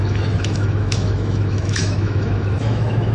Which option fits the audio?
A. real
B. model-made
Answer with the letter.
B